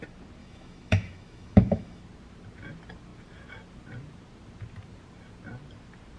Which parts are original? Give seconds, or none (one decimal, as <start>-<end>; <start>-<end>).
0.0-0.4; 2.0-6.2